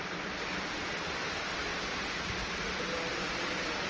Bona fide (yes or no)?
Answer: yes